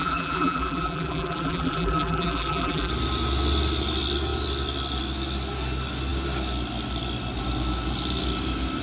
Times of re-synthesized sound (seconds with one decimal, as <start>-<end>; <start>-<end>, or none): 0.0-2.9